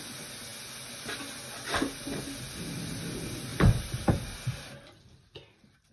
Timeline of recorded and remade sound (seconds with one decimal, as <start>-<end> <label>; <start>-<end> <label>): 0.0-3.5 recorded; 3.5-4.1 remade; 4.1-5.9 recorded

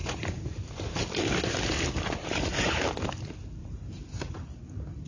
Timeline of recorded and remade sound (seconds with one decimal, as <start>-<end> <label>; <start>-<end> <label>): 0.0-3.1 remade; 3.1-3.6 recorded; 3.6-4.5 remade; 4.5-5.1 recorded

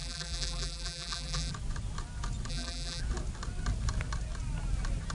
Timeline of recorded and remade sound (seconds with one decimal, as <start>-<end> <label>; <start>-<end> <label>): 0.0-1.5 remade; 1.5-2.5 recorded; 2.5-3.0 remade; 3.0-5.1 recorded